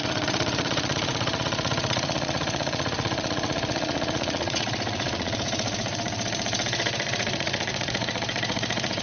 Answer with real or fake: fake